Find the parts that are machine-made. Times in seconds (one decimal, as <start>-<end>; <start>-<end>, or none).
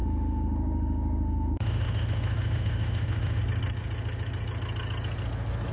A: 0.0-3.4